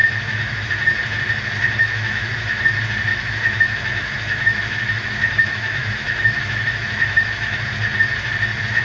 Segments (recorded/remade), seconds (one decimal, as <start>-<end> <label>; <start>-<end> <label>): 0.0-0.7 remade; 0.7-1.8 recorded; 1.8-2.6 remade; 2.6-3.1 recorded; 3.1-7.6 remade; 7.6-8.8 recorded